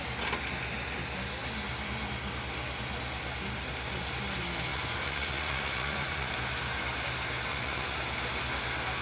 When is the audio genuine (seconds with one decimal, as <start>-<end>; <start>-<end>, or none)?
0.0-4.7; 6.3-7.5; 8.0-9.0

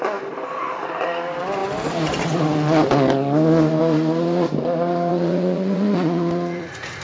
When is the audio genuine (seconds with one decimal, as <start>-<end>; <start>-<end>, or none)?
0.0-5.1

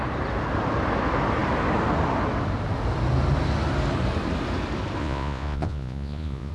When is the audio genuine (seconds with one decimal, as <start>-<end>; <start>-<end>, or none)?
0.0-5.0

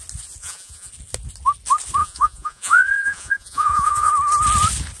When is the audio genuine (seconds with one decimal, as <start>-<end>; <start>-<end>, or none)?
0.0-0.4; 0.9-2.0; 4.1-5.0

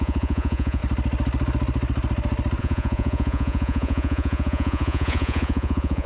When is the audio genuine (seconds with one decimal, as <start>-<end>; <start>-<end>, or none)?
0.8-2.6

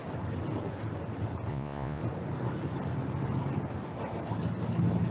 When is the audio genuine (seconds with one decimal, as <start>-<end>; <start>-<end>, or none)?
0.0-1.5; 2.0-5.1

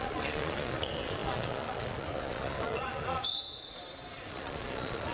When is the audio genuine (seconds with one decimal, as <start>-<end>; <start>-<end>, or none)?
3.8-4.3

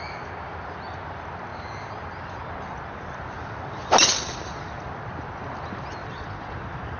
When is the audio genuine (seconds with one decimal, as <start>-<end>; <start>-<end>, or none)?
0.0-6.0